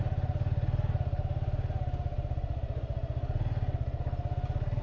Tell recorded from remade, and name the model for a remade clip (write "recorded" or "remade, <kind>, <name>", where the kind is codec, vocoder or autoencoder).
recorded